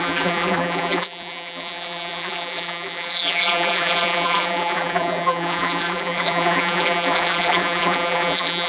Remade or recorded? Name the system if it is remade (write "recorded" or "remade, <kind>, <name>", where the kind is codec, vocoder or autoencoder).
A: remade, vocoder, BigVGAN v2